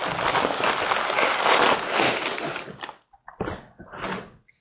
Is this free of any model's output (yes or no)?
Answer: yes